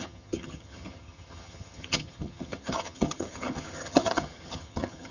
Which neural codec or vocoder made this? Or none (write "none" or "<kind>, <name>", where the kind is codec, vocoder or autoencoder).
vocoder, HiFi-GAN